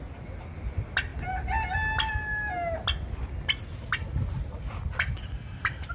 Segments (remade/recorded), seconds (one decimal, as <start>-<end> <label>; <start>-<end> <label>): 0.0-5.9 recorded